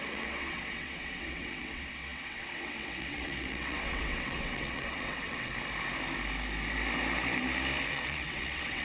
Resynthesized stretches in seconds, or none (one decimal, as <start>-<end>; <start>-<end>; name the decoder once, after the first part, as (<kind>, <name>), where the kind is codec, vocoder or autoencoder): 0.0-5.5 (vocoder, WaveNeXt); 7.9-8.8